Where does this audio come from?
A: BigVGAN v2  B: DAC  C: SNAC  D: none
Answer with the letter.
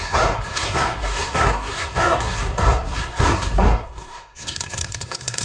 C